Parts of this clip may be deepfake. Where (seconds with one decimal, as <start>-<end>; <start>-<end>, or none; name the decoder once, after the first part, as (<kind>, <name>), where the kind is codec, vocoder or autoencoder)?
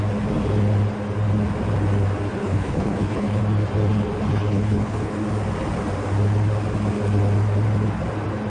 2.4-3.4 (codec, HILCodec); 4.3-5.1